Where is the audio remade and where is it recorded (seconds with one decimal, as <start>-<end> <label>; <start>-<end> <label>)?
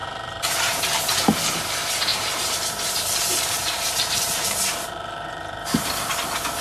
0.0-1.2 remade; 1.2-2.1 recorded; 2.1-6.1 remade; 6.1-6.6 recorded